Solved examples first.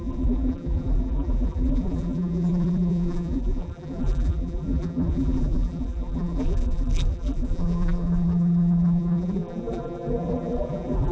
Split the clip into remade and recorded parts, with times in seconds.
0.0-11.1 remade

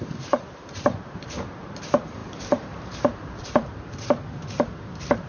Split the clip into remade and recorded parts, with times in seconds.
0.0-5.3 remade

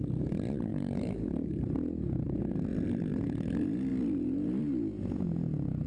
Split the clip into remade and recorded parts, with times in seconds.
0.0-0.7 recorded; 0.7-1.3 remade; 1.3-5.9 recorded

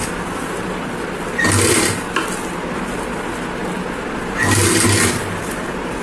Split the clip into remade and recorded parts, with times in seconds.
0.0-6.0 recorded

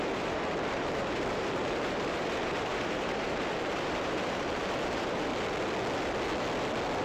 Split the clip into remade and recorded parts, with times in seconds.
0.0-5.3 remade; 5.3-7.0 recorded